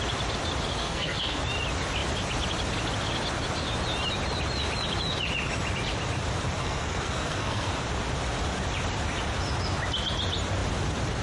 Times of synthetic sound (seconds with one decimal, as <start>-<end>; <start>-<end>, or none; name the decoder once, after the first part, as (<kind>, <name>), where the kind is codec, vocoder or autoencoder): 0.8-1.4 (codec, SNAC); 6.6-7.7